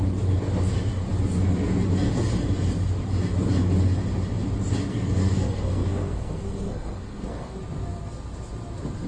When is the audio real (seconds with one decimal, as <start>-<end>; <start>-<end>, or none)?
0.0-4.9; 7.6-9.1